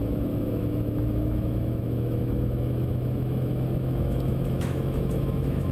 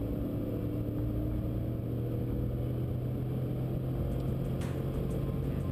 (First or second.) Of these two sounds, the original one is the second